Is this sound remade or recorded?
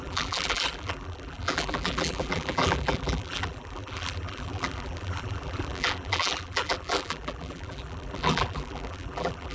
remade